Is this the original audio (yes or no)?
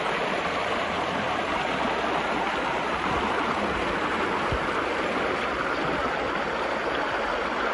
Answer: yes